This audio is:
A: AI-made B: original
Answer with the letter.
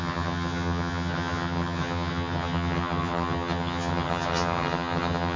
A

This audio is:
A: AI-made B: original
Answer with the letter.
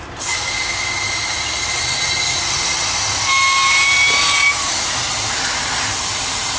B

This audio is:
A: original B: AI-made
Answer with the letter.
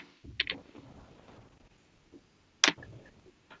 A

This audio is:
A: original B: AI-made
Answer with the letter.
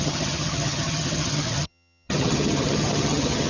B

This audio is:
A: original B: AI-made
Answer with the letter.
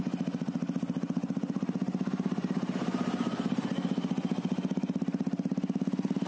A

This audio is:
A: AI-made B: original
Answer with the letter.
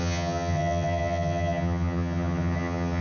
A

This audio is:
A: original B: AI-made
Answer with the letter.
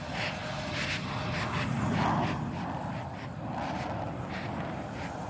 A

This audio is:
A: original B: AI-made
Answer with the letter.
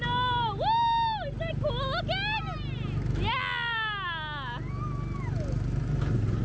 A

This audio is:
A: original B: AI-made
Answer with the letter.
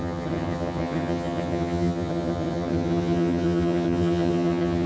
B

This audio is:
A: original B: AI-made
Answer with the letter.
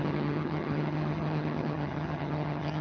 B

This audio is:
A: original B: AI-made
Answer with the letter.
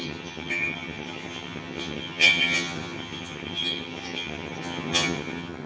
B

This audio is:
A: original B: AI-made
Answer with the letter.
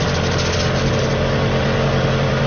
A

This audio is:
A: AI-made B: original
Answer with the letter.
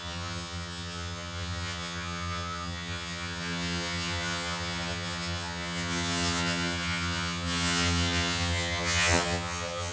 A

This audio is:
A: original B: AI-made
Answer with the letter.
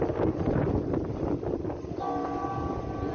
A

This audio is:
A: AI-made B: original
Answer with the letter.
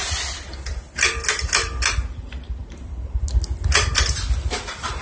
B